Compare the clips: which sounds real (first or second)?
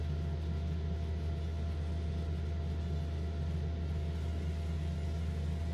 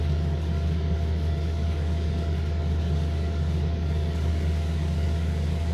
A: first